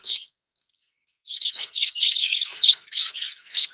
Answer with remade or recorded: remade